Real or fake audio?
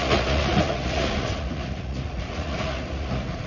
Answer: fake